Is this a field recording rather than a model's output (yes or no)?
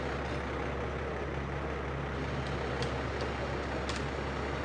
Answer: yes